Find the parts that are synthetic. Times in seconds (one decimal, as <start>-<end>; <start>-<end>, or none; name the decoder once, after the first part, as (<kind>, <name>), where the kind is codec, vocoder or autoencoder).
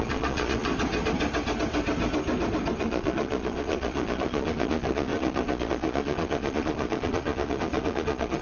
0.0-0.7 (vocoder, Vocos); 2.8-8.4